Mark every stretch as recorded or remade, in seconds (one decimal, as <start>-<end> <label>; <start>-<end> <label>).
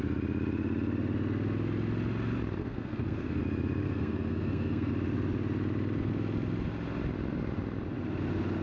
0.0-2.6 recorded; 2.6-3.4 remade; 3.4-3.8 recorded; 3.8-4.9 remade; 4.9-8.6 recorded